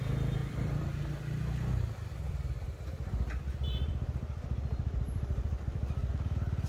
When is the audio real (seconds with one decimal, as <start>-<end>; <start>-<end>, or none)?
0.0-0.4; 1.1-2.1; 6.1-6.7